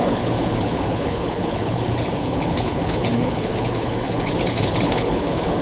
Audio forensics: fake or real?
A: fake